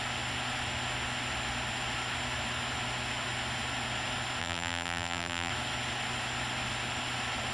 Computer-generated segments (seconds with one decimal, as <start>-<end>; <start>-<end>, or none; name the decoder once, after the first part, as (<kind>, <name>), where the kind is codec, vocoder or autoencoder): 4.4-5.5 (vocoder, BigVGAN v2)